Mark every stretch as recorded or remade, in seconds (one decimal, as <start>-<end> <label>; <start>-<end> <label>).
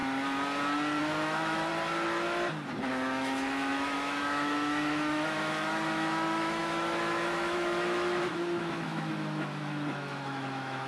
0.0-1.0 recorded; 1.0-1.7 remade; 1.7-2.9 recorded; 2.9-10.9 remade